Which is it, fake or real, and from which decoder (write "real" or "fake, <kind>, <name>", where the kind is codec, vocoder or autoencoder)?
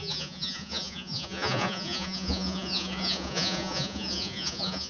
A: fake, vocoder, Vocos